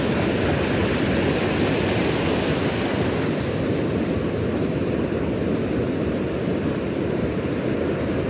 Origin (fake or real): real